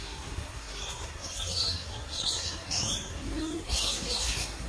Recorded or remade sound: remade